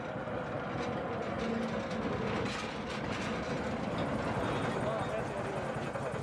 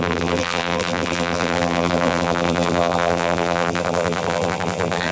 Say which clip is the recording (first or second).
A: first